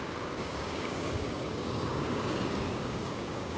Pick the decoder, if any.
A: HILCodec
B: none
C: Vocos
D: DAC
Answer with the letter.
D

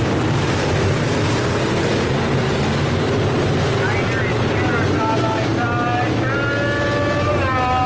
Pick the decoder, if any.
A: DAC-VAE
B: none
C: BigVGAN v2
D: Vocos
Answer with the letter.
B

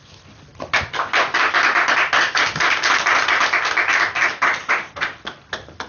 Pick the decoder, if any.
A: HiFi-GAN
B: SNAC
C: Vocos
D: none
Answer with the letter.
D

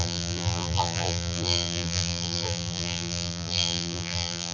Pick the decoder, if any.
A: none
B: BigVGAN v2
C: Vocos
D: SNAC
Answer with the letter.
B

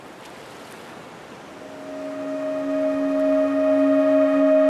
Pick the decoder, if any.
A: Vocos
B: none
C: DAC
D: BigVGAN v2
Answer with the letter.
B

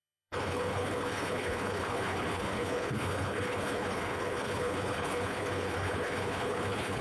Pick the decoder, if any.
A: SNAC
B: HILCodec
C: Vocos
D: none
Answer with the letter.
B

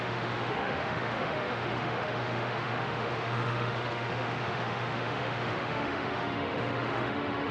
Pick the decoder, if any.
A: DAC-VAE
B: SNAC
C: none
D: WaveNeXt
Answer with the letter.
A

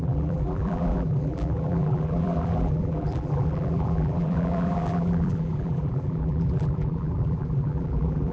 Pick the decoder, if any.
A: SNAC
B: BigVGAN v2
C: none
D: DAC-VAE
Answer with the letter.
B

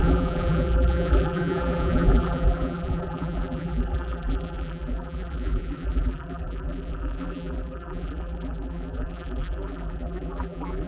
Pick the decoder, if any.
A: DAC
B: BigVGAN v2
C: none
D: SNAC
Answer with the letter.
B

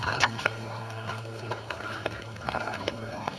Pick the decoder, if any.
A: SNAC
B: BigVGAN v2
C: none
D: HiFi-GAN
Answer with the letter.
A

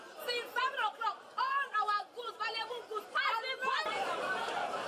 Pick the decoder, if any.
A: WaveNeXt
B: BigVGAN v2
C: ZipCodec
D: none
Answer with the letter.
B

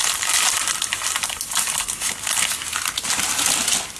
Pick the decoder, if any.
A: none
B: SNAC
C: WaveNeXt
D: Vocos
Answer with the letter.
A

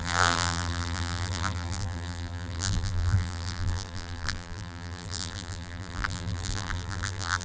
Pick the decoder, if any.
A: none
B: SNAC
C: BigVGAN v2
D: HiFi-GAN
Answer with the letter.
C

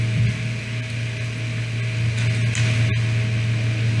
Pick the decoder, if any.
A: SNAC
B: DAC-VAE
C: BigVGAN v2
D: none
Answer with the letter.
D